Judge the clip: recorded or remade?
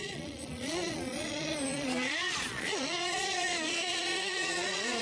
remade